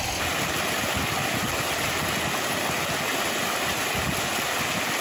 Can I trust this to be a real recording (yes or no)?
yes